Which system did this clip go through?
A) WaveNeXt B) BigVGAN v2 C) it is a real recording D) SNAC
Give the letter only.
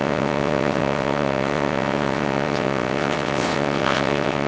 A